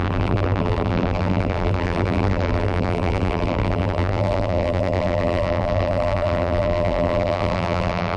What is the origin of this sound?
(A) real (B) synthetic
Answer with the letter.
B